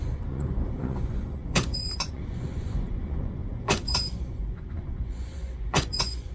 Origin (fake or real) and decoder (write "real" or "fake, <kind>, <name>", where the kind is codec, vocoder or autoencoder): fake, vocoder, Vocos